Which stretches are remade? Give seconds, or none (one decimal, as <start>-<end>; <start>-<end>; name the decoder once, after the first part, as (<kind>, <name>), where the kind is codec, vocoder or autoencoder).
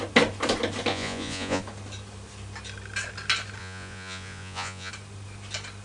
0.9-1.6 (vocoder, Vocos); 3.6-4.9